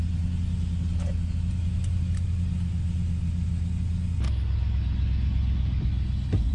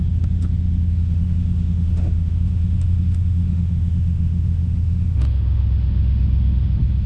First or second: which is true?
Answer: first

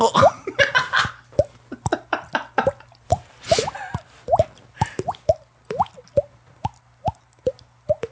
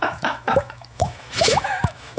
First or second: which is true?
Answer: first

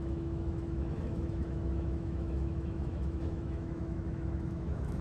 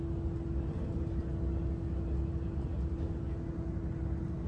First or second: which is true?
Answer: second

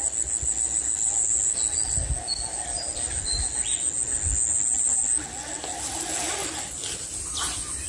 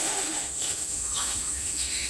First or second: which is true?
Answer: first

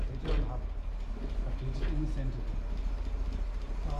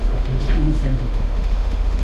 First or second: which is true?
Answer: first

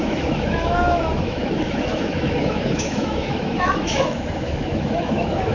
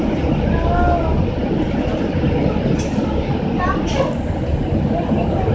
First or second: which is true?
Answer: second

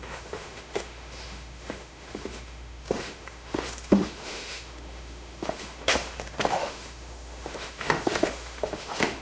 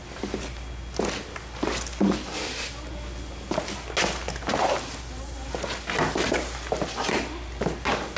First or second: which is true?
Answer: second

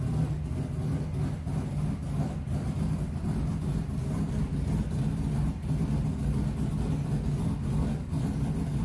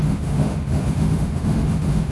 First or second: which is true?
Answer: first